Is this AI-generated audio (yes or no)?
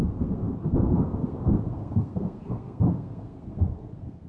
yes